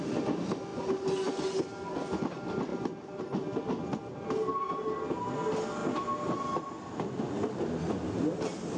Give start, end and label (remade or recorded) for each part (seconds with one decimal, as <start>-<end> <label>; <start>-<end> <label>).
0.0-8.8 recorded